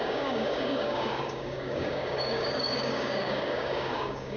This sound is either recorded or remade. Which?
remade